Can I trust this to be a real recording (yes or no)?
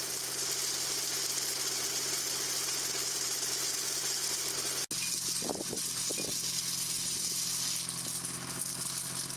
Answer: yes